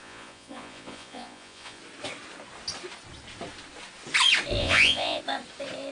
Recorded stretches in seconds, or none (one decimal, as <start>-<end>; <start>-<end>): 1.8-4.6; 5.2-5.9